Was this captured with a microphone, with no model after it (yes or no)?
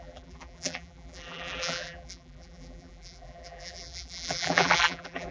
no